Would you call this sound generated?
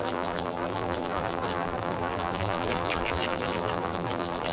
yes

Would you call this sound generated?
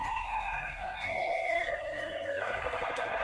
yes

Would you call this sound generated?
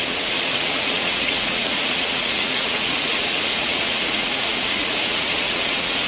yes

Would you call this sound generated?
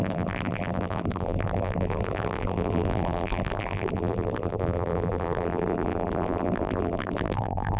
yes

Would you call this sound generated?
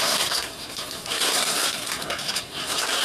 yes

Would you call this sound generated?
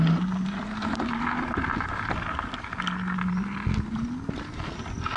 no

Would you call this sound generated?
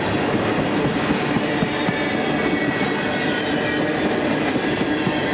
no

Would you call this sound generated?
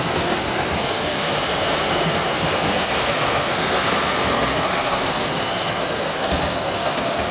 yes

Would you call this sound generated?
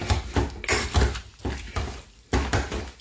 no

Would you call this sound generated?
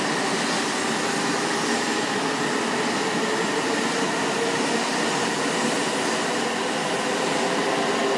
no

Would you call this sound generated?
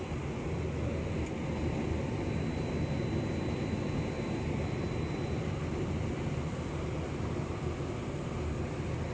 no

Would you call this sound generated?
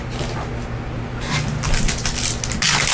no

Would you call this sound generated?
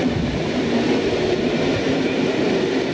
yes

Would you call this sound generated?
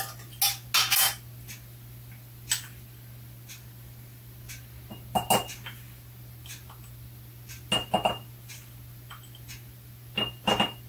no